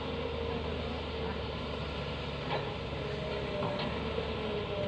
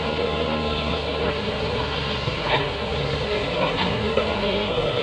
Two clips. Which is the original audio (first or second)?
first